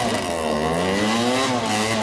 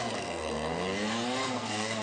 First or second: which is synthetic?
second